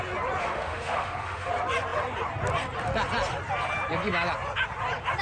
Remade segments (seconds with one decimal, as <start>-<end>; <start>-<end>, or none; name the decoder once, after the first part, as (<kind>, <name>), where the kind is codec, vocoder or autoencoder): 0.4-1.5 (autoencoder, DAC-VAE)